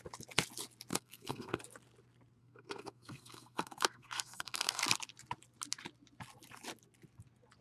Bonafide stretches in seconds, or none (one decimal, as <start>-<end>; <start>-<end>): 0.0-0.9; 1.6-2.4; 4.8-7.6